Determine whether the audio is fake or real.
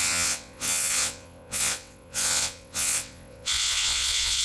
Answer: fake